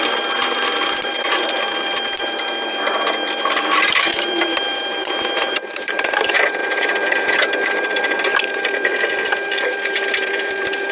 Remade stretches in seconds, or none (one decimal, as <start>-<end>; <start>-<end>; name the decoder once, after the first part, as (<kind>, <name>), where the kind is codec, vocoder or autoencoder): 0.0-10.9 (vocoder, BigVGAN v2)